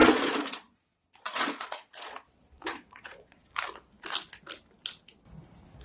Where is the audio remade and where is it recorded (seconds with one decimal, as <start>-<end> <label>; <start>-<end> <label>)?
0.0-3.5 remade; 3.5-5.8 recorded